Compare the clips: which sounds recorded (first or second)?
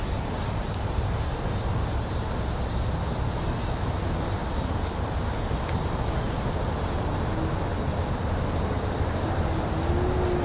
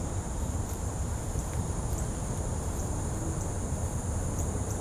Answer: first